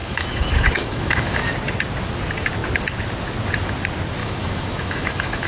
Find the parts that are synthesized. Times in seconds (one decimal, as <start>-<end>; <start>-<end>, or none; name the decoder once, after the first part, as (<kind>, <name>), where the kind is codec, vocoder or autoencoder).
0.0-1.5 (autoencoder, DAC-VAE); 4.2-5.5